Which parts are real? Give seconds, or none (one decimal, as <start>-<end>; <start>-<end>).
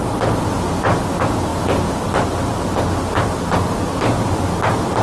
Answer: 0.0-5.0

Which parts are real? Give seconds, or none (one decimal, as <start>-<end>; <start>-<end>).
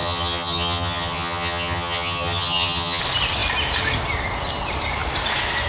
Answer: 3.0-5.7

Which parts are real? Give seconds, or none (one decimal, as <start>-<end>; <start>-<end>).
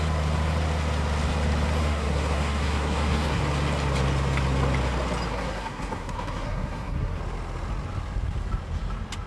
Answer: 0.0-1.8; 3.4-5.3; 7.2-9.3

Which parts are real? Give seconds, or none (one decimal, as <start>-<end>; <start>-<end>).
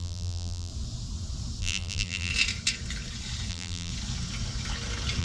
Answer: 0.7-1.6; 2.3-3.5; 3.9-5.2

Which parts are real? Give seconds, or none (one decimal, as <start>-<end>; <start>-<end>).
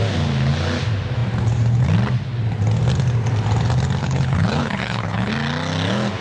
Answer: 0.0-4.0; 5.3-6.2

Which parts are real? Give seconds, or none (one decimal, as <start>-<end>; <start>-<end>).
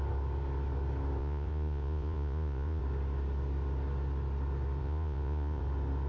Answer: 0.0-1.2; 2.8-4.8; 5.6-6.1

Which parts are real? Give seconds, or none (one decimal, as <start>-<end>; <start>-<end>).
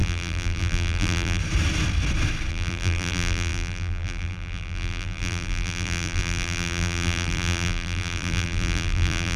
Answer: 1.4-2.5